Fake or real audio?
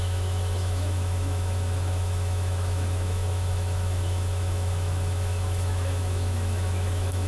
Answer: fake